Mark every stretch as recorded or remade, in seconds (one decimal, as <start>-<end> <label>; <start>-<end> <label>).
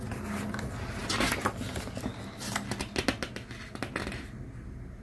0.0-5.0 recorded